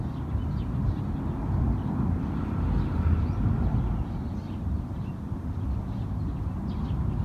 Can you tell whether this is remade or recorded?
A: recorded